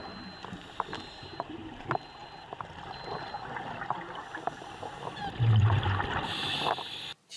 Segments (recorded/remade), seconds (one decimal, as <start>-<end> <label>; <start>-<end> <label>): 0.0-7.4 recorded